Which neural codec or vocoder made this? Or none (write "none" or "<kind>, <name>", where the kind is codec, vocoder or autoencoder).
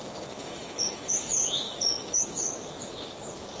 codec, DAC